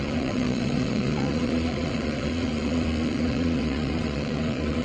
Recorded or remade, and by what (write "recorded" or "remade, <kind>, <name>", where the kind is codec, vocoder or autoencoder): remade, vocoder, Vocos